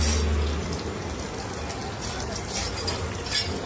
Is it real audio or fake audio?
real